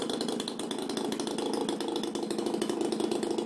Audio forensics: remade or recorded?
recorded